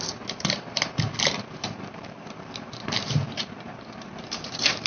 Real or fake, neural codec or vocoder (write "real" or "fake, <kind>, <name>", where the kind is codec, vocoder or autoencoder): fake, vocoder, BigVGAN v2